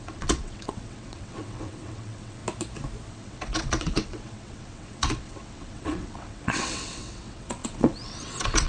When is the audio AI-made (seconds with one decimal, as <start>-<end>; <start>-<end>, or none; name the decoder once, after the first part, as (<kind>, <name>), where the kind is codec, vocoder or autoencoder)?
0.0-2.4 (vocoder, WaveNeXt); 3.1-8.7